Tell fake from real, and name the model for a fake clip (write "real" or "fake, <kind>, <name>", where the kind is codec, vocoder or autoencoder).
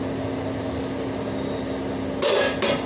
real